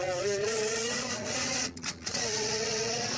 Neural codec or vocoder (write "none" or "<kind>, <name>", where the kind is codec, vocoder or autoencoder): vocoder, Vocos